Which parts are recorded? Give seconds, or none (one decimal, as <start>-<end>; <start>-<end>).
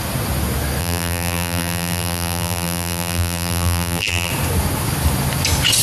0.0-0.8; 4.3-5.8